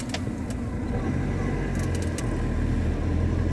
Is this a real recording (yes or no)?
yes